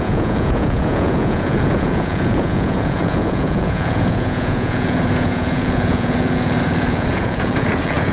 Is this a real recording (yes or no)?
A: no